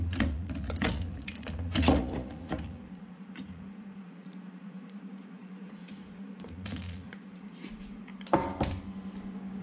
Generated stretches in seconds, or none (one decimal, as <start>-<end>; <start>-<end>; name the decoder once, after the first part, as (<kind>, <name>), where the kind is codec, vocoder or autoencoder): 0.0-8.1 (vocoder, Vocos)